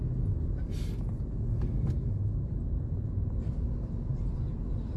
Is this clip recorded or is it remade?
recorded